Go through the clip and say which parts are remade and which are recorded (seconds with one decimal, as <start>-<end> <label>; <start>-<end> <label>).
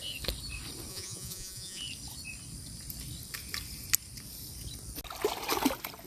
0.0-0.9 recorded; 0.9-1.8 remade; 1.8-6.1 recorded